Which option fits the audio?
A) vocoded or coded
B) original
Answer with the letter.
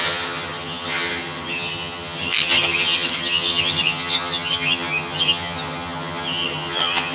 A